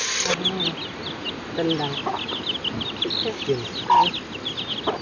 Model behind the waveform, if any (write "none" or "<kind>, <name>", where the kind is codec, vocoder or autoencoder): none